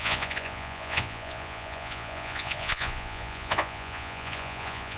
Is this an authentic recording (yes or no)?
no